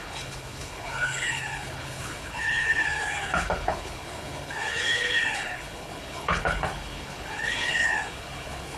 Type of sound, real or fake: fake